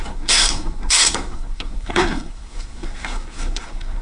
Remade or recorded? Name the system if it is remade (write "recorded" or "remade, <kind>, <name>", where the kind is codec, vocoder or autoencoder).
remade, codec, SNAC